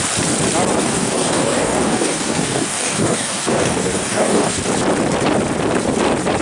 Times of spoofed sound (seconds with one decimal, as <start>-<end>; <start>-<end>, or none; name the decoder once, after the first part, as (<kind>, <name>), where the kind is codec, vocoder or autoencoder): 0.8-4.6 (codec, DAC)

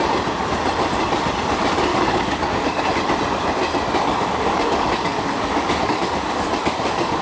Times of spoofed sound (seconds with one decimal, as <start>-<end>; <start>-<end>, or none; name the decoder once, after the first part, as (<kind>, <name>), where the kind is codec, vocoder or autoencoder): 1.9-2.8 (codec, DAC); 4.0-7.2

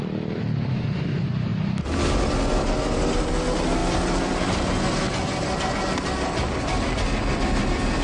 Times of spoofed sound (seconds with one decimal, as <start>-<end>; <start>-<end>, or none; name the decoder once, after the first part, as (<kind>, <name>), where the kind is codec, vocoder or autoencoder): none

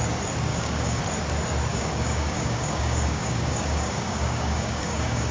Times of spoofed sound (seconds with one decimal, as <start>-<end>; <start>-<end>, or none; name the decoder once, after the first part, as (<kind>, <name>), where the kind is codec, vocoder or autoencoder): 0.5-1.0 (codec, DAC); 1.7-5.3

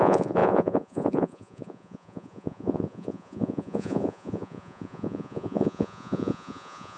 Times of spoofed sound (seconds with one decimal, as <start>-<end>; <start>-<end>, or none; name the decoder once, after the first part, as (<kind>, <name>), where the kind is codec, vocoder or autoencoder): 0.0-7.0 (vocoder, Vocos)

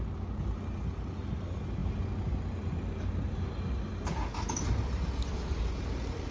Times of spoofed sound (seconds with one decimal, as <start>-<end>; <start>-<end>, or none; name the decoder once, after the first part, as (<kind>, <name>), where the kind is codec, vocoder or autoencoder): none